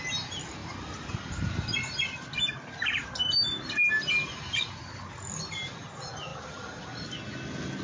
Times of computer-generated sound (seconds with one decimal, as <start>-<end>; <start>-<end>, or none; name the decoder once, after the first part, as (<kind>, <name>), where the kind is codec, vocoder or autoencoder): 0.6-3.9 (vocoder, BigVGAN v2); 6.3-7.2